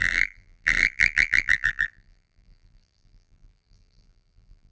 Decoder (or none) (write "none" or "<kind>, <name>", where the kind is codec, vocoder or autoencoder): vocoder, BigVGAN v2